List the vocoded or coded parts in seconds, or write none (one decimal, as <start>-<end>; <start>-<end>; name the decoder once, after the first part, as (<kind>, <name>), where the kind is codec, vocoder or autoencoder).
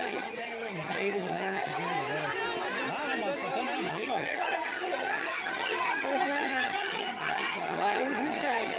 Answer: 0.0-1.7 (vocoder, HiFi-GAN); 3.9-8.8